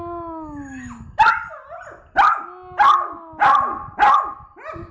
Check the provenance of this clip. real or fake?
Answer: real